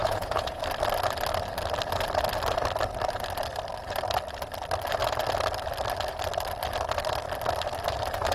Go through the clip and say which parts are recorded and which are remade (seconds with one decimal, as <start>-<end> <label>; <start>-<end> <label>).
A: 0.0-0.6 remade; 0.6-8.3 recorded